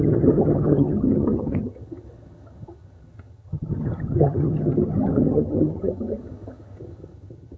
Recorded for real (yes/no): no